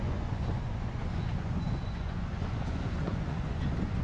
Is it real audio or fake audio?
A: fake